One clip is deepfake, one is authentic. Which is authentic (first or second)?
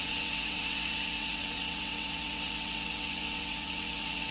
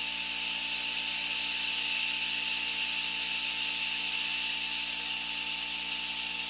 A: second